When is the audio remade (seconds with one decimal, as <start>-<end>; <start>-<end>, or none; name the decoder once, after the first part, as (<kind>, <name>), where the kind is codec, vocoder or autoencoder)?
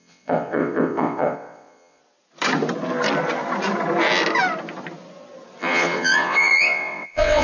0.0-2.0 (vocoder, WaveNeXt); 5.6-7.4